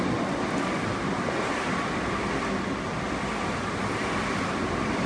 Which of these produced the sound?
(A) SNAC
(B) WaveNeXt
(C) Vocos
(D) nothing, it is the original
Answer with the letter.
D